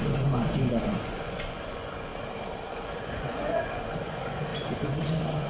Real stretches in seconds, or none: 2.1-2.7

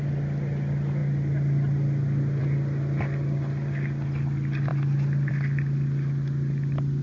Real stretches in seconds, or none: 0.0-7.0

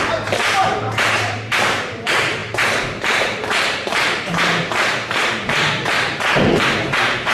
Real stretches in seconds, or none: none